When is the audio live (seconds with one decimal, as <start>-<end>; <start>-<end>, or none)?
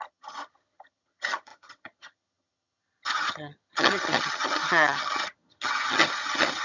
none